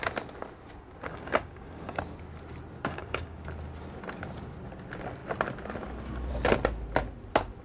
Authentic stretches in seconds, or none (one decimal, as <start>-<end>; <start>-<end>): 0.0-1.1; 2.0-2.9; 3.4-7.6